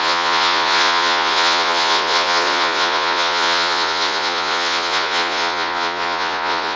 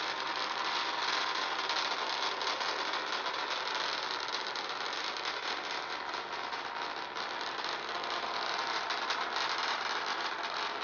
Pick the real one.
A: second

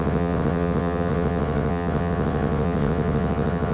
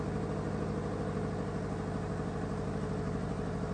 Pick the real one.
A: second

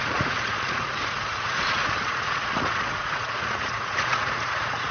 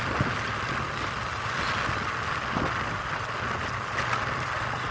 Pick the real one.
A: second